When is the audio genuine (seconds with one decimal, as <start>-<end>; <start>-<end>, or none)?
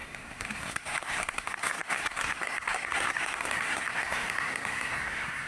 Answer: none